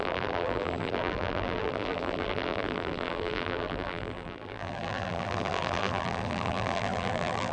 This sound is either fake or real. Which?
fake